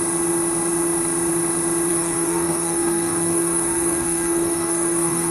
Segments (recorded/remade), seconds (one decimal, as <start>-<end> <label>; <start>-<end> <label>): 0.0-1.9 recorded; 1.9-5.3 remade